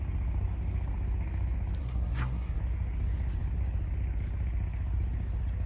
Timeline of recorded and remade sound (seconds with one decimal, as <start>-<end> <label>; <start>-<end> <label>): 0.0-1.8 recorded; 1.8-2.6 remade; 2.6-5.7 recorded